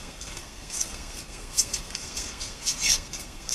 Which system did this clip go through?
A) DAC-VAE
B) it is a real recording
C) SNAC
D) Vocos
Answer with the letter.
C